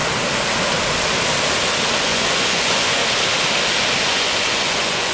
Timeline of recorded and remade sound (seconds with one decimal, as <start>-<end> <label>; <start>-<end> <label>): 0.0-2.0 recorded; 2.0-3.0 remade; 3.0-4.0 recorded; 4.0-5.1 remade